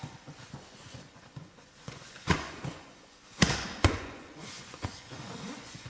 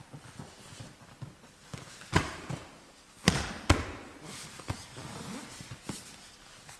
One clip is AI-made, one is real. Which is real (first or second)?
second